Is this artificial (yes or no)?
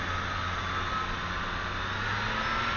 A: no